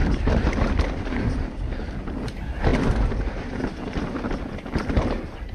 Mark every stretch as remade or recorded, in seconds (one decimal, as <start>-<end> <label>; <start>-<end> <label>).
0.0-2.7 recorded; 2.7-3.4 remade; 3.4-5.5 recorded